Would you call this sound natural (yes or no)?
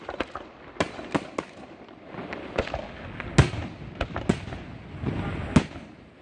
yes